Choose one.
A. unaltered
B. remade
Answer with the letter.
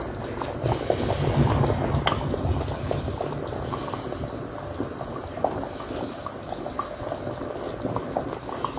A